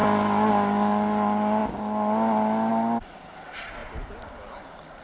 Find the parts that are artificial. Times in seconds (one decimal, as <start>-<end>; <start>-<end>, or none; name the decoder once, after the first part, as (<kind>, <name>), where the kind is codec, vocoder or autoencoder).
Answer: none